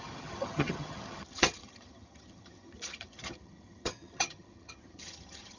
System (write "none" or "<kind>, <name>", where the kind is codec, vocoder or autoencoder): vocoder, HiFi-GAN